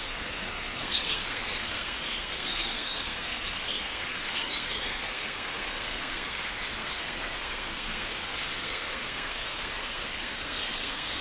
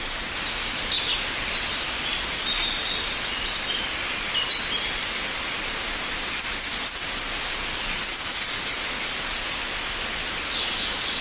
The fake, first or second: first